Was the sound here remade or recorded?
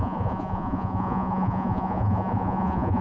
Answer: remade